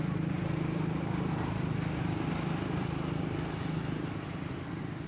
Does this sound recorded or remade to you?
recorded